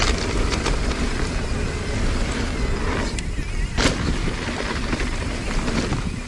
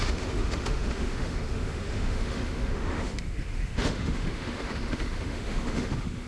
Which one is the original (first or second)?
first